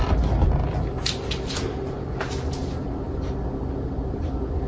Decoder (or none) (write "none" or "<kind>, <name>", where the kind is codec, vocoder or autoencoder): none